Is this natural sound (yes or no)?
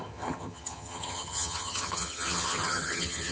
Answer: no